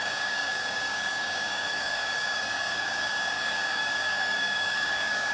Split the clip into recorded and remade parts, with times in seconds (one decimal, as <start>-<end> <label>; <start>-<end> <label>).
0.0-5.3 remade